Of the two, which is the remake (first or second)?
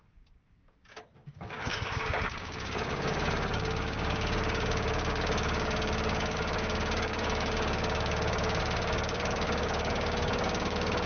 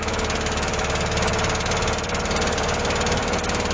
first